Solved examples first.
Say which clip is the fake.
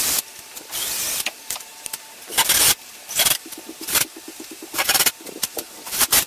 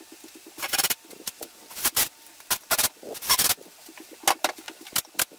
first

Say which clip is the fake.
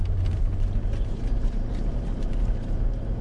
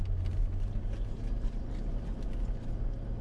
first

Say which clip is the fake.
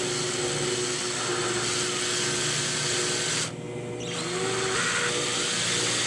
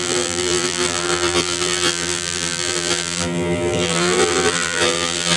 second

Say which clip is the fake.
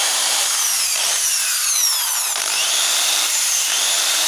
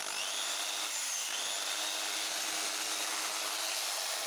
first